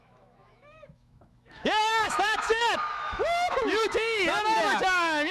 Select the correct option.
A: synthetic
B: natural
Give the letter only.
A